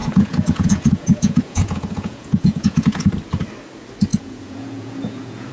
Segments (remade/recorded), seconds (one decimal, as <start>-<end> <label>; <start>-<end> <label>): 0.0-3.1 remade; 3.1-4.1 recorded; 4.1-5.5 remade